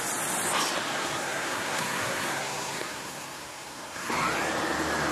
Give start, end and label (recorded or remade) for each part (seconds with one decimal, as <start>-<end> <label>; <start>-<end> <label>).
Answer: 0.0-1.0 recorded; 1.0-4.1 remade; 4.1-5.1 recorded